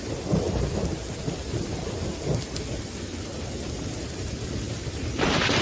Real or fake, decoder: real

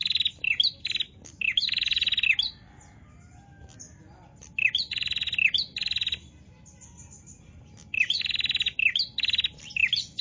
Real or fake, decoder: real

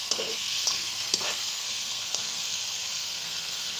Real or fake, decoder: fake, codec, SNAC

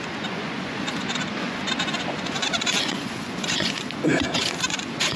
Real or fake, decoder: fake, vocoder, Vocos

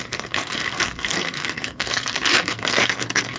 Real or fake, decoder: fake, codec, SNAC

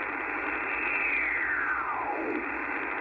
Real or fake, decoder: real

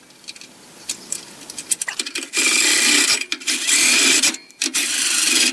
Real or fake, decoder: fake, vocoder, BigVGAN v2